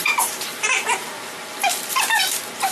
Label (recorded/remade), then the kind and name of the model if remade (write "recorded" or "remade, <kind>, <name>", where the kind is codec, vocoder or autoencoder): remade, vocoder, BigVGAN v2